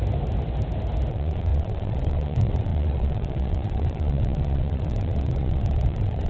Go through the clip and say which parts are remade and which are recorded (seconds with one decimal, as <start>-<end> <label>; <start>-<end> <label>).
0.0-1.1 recorded; 1.1-6.3 remade